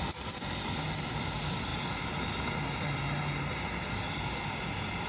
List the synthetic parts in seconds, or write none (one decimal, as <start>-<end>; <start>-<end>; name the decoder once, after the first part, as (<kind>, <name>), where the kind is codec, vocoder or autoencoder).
none